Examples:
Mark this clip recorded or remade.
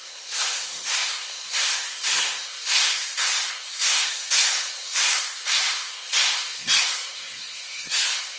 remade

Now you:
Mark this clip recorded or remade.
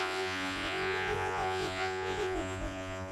remade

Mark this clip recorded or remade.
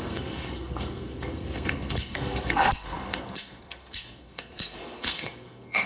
remade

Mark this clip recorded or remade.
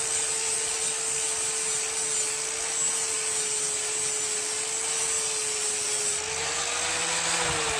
recorded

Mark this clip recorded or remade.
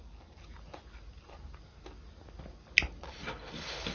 recorded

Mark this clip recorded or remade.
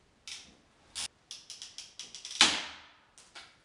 recorded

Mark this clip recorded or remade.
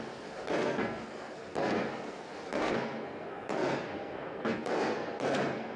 remade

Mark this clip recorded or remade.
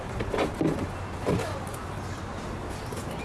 recorded